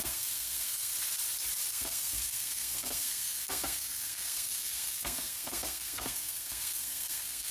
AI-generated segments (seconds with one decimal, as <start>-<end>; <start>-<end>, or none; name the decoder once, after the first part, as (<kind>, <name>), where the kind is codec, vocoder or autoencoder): 0.0-0.9 (codec, SNAC); 1.7-7.5